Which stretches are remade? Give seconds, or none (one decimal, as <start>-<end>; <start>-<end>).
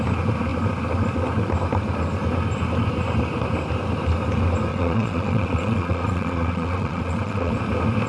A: 4.7-7.5